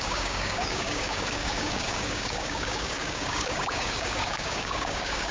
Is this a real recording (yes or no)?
no